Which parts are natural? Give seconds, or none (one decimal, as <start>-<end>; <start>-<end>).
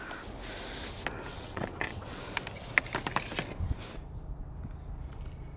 0.0-1.3; 2.2-5.6